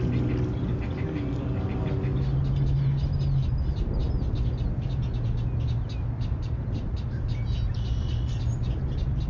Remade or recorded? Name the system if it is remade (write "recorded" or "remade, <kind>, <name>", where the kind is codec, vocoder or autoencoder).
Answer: recorded